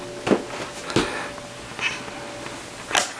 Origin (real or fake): real